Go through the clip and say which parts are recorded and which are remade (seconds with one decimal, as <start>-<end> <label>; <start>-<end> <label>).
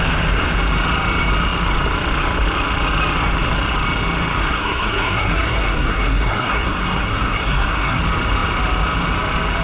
0.0-4.4 recorded; 4.4-8.0 remade; 8.0-9.6 recorded